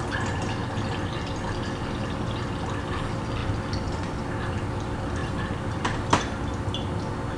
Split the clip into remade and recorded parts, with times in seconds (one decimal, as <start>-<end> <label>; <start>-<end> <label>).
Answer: 0.0-3.4 recorded; 3.4-4.6 remade; 4.6-5.2 recorded; 5.2-6.9 remade; 6.9-7.4 recorded